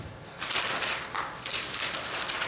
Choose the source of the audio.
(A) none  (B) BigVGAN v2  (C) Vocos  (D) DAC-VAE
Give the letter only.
A